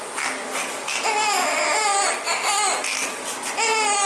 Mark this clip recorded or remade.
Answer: recorded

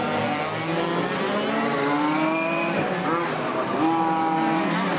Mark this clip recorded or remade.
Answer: recorded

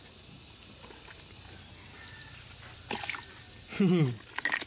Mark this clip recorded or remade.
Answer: recorded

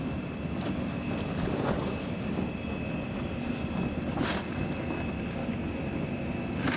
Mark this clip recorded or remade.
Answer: recorded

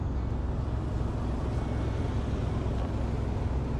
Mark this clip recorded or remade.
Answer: recorded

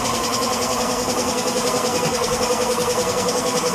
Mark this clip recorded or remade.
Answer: remade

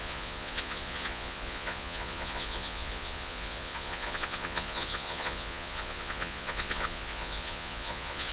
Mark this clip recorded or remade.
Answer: remade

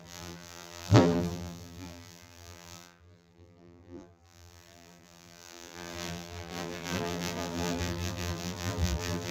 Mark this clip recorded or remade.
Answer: remade